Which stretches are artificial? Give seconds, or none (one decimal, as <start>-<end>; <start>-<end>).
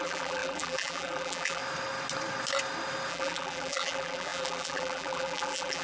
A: 0.0-1.6; 3.1-5.8